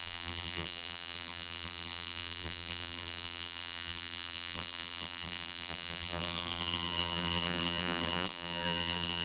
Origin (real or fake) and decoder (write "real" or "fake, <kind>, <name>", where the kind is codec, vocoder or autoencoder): fake, vocoder, BigVGAN v2